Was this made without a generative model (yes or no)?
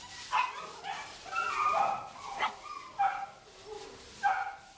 yes